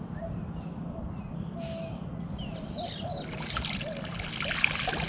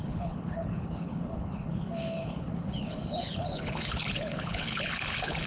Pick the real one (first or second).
first